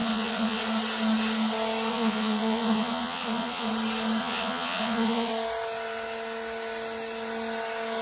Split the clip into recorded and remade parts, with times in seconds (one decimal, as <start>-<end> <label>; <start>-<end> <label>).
0.0-0.6 remade; 0.6-1.9 recorded; 1.9-3.7 remade; 3.7-4.2 recorded; 4.2-5.3 remade; 5.3-8.0 recorded